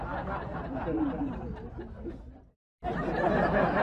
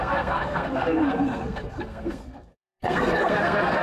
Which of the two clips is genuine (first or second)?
first